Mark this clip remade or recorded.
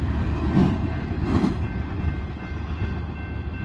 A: recorded